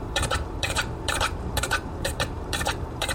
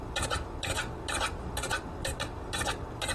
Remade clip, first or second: first